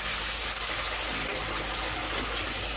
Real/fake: real